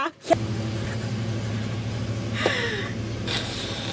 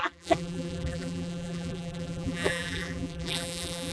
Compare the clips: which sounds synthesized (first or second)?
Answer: second